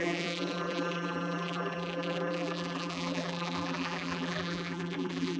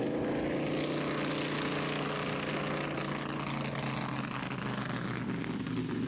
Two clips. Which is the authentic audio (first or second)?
second